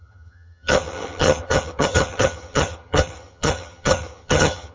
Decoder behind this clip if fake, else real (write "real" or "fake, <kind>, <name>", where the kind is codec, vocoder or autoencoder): fake, vocoder, HiFi-GAN